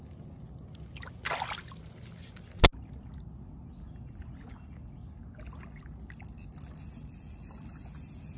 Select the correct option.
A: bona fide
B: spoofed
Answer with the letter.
A